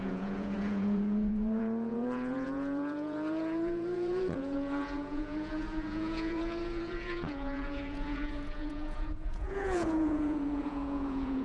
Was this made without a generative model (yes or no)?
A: no